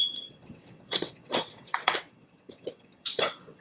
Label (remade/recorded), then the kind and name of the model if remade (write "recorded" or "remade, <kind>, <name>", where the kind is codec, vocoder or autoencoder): remade, vocoder, WaveNeXt